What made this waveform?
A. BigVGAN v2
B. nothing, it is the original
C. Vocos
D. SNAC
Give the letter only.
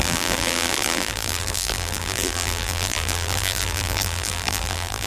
A